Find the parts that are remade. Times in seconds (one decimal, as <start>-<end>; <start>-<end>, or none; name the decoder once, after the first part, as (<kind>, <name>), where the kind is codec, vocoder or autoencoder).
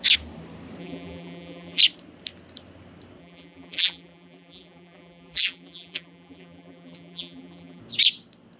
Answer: 0.8-1.8 (vocoder, BigVGAN v2); 3.2-7.8